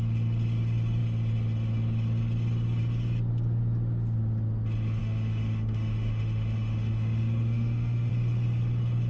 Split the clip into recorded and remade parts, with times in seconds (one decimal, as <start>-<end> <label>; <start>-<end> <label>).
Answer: 0.0-5.0 recorded; 5.0-8.1 remade; 8.1-9.1 recorded